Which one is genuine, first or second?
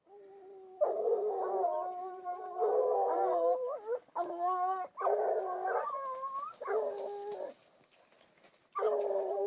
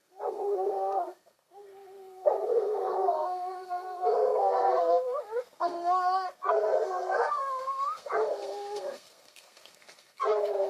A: first